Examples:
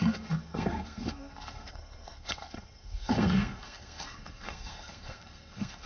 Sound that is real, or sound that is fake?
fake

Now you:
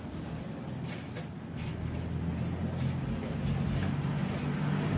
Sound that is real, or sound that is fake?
real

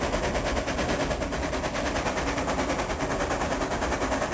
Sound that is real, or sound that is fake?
real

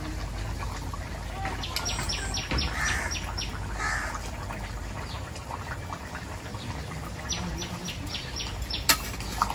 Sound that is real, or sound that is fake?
real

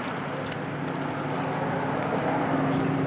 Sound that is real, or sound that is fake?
real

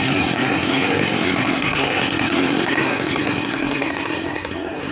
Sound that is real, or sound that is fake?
fake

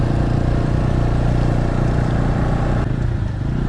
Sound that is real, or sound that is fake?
real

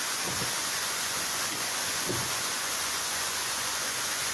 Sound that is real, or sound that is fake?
fake